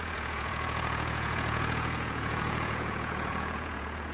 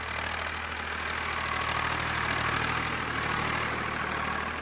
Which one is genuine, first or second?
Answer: second